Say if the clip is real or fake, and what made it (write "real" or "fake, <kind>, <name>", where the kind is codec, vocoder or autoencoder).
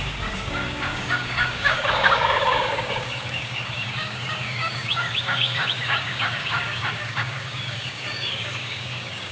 fake, codec, DAC